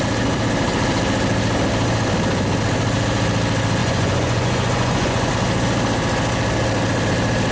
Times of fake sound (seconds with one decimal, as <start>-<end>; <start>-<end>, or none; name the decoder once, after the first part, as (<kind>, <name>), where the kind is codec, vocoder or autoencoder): 3.8-5.3 (vocoder, Vocos)